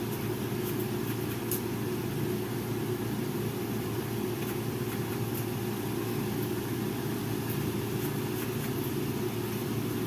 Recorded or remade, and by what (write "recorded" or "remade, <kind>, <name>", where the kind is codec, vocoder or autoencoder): recorded